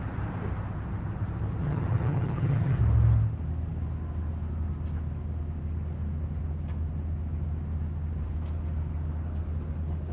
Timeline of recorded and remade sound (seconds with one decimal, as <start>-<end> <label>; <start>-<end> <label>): 0.0-1.6 recorded; 1.6-2.8 remade; 2.8-10.1 recorded